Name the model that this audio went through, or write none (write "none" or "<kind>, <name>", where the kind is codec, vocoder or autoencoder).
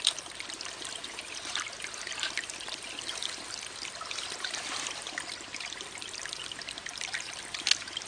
none